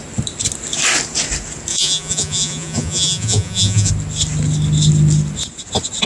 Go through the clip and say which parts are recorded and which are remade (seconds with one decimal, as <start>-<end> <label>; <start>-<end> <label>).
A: 0.0-1.7 recorded; 1.7-3.9 remade; 3.9-6.1 recorded